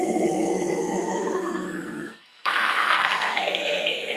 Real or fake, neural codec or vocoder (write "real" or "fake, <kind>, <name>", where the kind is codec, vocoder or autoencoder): fake, codec, SNAC